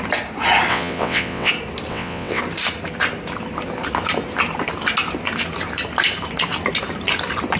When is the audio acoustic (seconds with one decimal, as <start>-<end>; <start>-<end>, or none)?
0.0-0.7; 1.5-1.9; 2.4-7.6